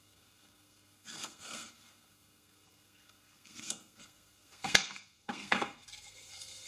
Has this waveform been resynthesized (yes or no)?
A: yes